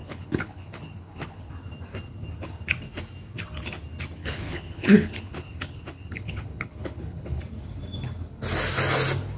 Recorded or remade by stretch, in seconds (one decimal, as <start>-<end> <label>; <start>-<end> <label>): 0.0-1.5 remade; 1.5-4.2 recorded; 4.2-7.4 remade; 7.4-9.4 recorded